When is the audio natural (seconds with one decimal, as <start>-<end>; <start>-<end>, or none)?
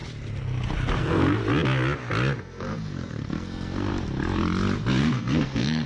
0.0-1.0; 1.4-2.4; 3.9-5.0